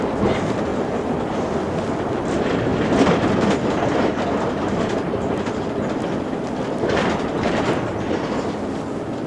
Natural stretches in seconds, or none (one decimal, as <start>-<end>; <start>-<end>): 0.0-0.7; 2.2-2.7; 7.4-9.3